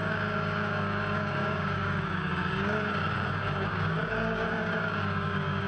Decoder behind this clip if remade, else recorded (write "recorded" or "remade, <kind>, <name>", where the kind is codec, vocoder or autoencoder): remade, codec, DAC